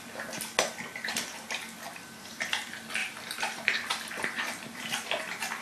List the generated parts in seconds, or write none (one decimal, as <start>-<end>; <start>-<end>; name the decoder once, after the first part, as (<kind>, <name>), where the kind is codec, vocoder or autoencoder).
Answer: 3.0-4.4 (vocoder, BigVGAN v2)